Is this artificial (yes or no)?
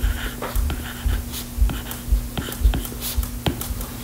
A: no